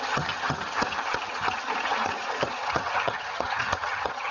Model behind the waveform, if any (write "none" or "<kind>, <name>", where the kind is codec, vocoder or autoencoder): vocoder, HiFi-GAN